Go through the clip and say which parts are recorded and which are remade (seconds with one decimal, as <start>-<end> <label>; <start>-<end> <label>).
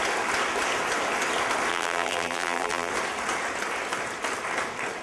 0.0-1.7 recorded; 1.7-2.9 remade; 2.9-5.0 recorded